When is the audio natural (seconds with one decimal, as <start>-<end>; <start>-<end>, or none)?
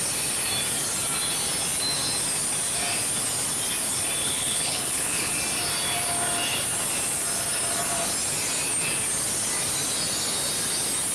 0.0-4.2; 5.3-11.1